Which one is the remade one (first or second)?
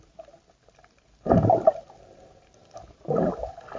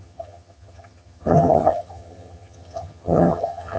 second